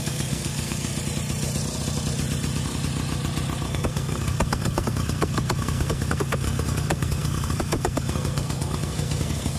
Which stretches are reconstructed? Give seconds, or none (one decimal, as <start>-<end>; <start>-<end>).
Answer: 0.0-0.9; 3.7-9.6